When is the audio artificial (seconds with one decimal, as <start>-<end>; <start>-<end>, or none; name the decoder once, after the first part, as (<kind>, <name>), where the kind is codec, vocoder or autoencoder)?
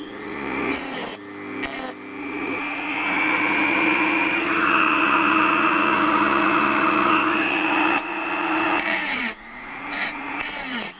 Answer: 0.0-1.1 (vocoder, Vocos); 2.2-11.0